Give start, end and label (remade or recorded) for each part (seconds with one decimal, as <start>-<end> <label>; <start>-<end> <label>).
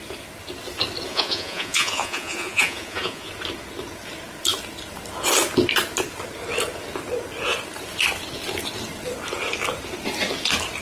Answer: 0.0-1.1 recorded; 1.1-3.3 remade; 3.3-10.8 recorded